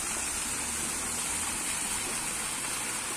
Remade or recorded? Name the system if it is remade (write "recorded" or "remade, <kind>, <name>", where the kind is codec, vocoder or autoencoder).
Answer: recorded